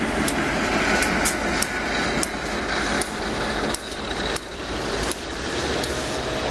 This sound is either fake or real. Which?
real